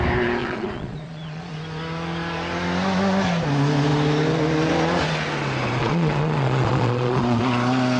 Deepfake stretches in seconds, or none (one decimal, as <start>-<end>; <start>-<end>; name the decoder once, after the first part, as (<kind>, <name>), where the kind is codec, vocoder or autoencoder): 0.4-1.5 (vocoder, Vocos); 5.8-7.4

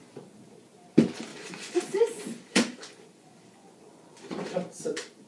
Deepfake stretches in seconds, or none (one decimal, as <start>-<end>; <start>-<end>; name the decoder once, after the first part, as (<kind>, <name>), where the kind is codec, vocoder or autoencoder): 1.3-4.5 (vocoder, Vocos)

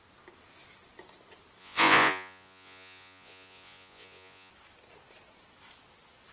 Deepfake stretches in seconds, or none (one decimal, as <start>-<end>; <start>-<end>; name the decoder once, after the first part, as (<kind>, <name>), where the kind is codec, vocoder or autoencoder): 1.6-4.5 (vocoder, Vocos)